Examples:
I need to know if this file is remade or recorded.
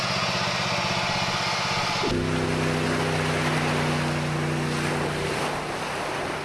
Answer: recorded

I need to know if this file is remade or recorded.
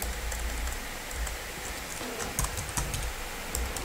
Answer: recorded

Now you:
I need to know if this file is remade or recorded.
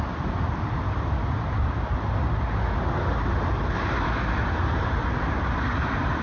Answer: recorded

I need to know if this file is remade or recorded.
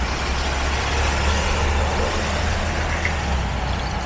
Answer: recorded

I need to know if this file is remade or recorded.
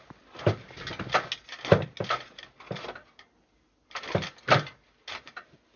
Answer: recorded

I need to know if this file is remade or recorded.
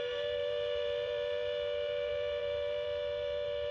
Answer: remade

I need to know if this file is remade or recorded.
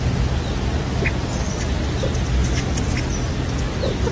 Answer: recorded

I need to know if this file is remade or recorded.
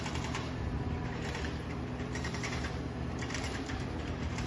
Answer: remade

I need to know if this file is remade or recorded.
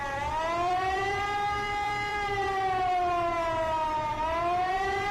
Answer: remade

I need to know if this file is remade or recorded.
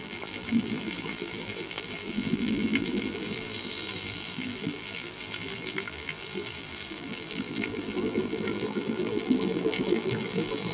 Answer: remade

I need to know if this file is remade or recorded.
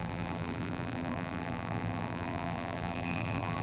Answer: remade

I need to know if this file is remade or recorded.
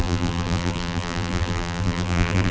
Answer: remade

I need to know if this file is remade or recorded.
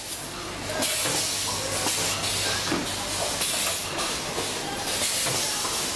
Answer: recorded